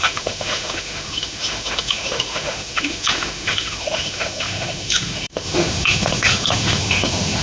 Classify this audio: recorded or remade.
remade